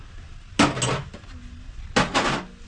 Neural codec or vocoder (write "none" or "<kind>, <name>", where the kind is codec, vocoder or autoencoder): none